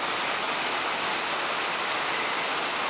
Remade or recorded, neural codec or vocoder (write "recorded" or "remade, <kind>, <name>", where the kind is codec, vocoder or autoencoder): recorded